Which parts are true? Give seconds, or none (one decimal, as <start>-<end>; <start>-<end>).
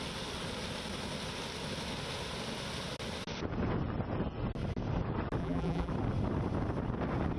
0.0-5.4; 5.9-7.4